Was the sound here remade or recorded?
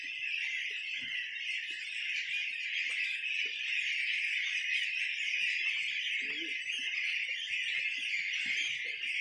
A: recorded